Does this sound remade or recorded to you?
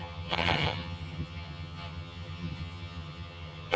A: remade